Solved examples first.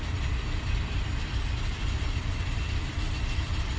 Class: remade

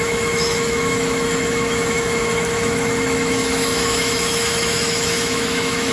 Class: remade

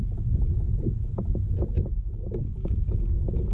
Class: remade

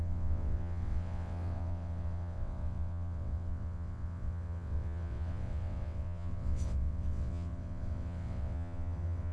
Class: remade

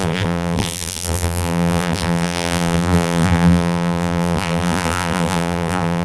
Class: remade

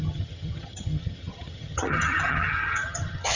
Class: remade